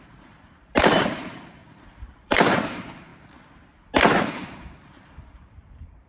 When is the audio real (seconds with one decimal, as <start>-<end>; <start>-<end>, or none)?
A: 3.1-4.2